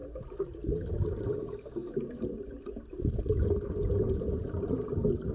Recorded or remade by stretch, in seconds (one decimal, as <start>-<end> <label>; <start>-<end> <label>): 0.0-0.7 remade; 0.7-5.3 recorded